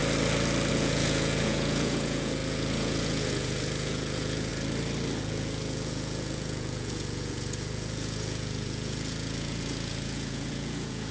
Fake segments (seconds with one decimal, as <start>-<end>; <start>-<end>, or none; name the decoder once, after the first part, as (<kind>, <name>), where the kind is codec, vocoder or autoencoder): 0.7-4.5 (vocoder, Vocos); 5.2-11.1